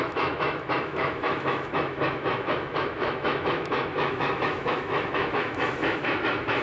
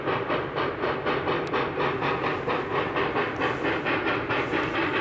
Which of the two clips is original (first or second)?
second